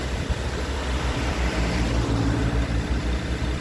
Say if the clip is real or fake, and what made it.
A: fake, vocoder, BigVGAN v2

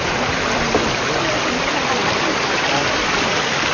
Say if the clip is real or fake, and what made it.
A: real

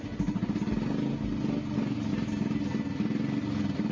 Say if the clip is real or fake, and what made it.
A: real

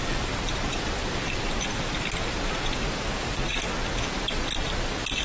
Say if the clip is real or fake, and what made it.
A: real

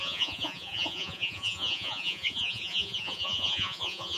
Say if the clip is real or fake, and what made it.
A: fake, vocoder, Vocos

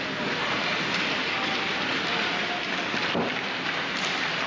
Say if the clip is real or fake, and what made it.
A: real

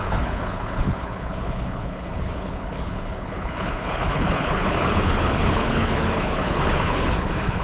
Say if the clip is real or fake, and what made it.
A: fake, codec, HILCodec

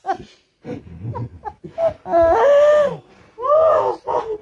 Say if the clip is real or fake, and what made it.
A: real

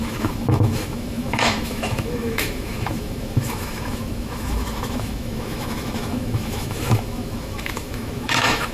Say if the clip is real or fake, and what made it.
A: fake, autoencoder, DAC-VAE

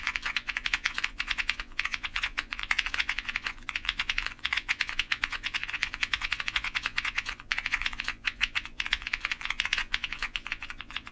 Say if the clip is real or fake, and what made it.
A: fake, vocoder, Vocos